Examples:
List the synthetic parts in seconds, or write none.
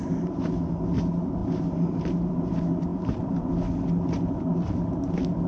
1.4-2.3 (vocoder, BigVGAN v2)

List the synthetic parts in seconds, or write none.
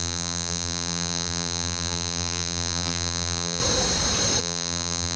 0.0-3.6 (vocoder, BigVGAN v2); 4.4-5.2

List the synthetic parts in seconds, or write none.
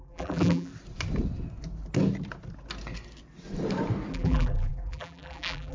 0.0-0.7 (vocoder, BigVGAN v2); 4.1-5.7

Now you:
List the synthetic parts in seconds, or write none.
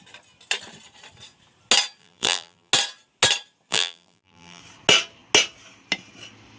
2.0-2.7 (vocoder, BigVGAN v2); 3.7-4.6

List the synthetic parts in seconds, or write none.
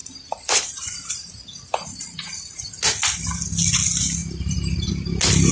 0.0-2.7 (vocoder, BigVGAN v2); 4.2-4.9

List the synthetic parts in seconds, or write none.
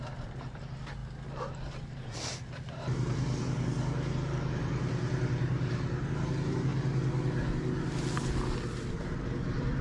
0.0-6.7 (vocoder, BigVGAN v2); 8.9-9.8